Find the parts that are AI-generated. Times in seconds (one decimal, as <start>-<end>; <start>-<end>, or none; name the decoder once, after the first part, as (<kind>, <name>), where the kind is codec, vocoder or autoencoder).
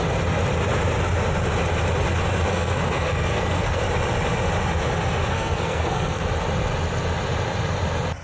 2.5-3.8 (codec, SNAC); 5.2-6.2